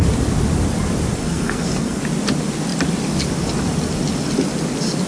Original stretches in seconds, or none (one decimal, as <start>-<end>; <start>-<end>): 0.0-1.2; 2.0-5.1